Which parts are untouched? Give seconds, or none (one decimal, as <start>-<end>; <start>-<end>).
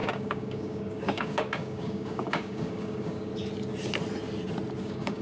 3.3-4.8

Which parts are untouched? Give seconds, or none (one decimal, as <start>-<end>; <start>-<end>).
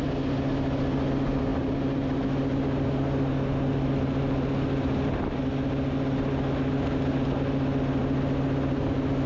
0.0-9.3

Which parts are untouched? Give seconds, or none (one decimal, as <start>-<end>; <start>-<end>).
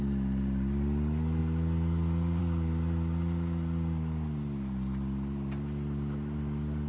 0.0-6.9